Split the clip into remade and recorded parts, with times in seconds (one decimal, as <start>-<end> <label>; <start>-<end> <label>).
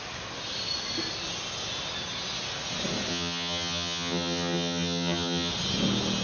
0.0-3.1 recorded; 3.1-5.5 remade; 5.5-6.2 recorded